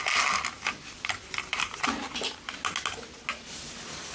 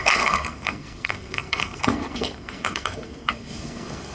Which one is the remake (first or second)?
second